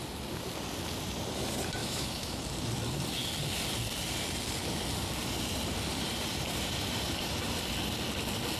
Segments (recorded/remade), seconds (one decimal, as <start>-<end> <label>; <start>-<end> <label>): 0.0-1.8 recorded; 1.8-2.4 remade; 2.4-8.6 recorded